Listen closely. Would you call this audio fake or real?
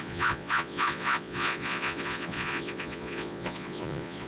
fake